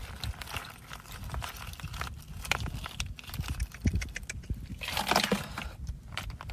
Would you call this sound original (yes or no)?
yes